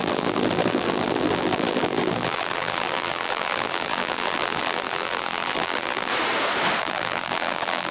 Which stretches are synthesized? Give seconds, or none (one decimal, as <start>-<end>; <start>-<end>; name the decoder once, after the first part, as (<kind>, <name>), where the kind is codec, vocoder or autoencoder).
0.0-6.1 (vocoder, BigVGAN v2); 6.8-7.9